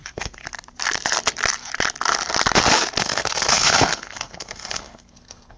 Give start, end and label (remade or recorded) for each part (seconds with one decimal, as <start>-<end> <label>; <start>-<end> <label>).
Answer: 0.0-0.4 remade; 0.4-3.0 recorded; 3.0-5.6 remade